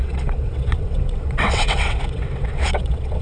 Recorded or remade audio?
remade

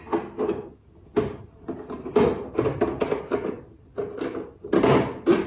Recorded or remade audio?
recorded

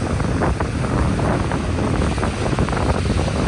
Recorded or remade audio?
recorded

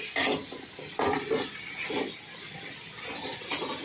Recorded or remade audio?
recorded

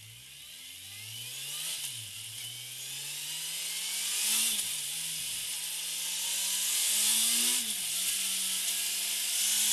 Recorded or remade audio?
recorded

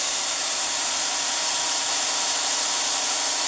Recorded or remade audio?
remade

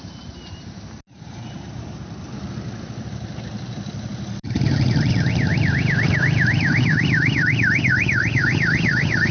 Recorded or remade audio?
remade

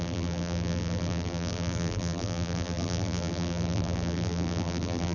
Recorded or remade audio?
remade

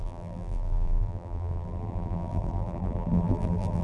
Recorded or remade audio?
remade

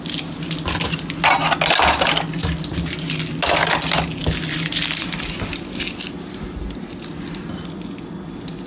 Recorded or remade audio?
recorded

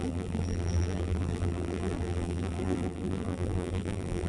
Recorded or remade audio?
remade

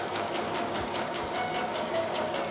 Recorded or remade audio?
remade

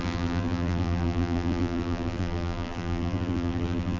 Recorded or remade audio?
remade